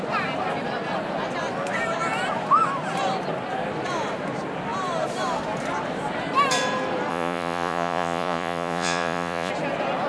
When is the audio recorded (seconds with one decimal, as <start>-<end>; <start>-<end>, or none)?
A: 0.0-7.1; 9.5-10.1

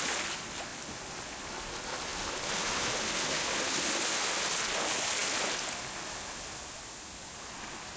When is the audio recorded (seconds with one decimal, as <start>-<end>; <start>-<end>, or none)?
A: 0.0-8.0

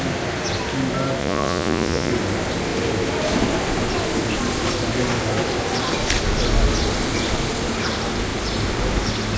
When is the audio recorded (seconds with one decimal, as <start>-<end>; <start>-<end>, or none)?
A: 0.0-1.2; 2.1-9.4